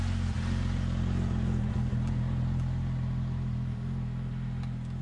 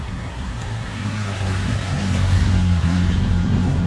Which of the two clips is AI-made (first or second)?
second